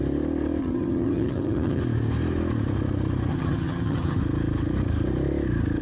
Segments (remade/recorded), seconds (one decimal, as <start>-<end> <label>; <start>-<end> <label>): 0.0-0.6 recorded; 0.6-1.8 remade; 1.8-3.3 recorded; 3.3-4.2 remade; 4.2-5.8 recorded